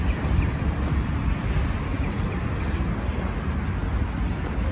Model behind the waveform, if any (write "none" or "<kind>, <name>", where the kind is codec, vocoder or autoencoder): none